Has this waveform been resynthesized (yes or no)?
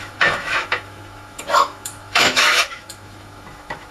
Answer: yes